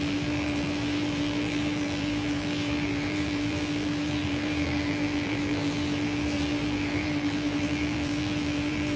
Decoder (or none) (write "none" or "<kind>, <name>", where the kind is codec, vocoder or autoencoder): vocoder, BigVGAN v2